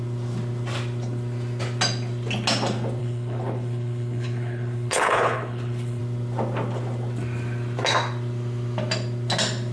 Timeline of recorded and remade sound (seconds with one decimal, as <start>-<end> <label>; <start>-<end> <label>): 0.0-3.0 recorded; 3.0-6.0 remade; 6.0-9.7 recorded

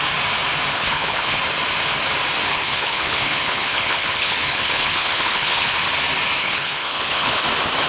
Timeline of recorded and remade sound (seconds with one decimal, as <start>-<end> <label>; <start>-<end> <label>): 0.0-0.7 recorded; 0.7-1.4 remade; 1.4-2.5 recorded; 2.5-5.7 remade; 5.7-6.4 recorded; 6.4-7.4 remade; 7.4-7.9 recorded

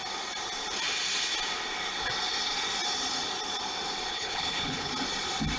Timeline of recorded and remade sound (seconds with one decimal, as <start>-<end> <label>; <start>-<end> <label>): 0.0-4.1 recorded; 4.1-4.9 remade; 4.9-5.6 recorded

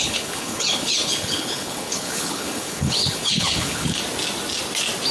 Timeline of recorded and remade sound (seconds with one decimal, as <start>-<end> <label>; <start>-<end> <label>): 0.0-4.0 remade; 4.0-5.1 recorded

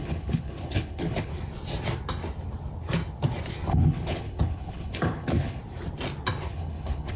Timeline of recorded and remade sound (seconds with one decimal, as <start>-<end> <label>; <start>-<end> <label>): 0.0-1.3 remade; 1.3-3.7 recorded; 3.7-5.6 remade; 5.6-6.5 recorded; 6.5-7.2 remade